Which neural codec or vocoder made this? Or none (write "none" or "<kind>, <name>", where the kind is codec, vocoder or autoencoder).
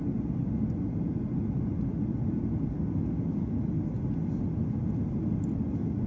none